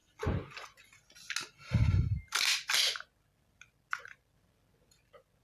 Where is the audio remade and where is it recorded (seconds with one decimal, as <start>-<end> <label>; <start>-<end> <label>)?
0.0-5.4 recorded